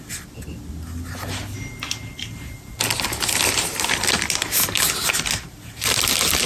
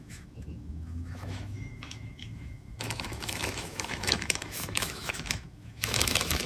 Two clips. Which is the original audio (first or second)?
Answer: first